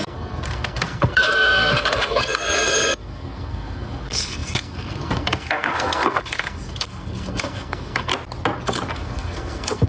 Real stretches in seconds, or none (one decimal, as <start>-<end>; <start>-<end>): 8.1-8.9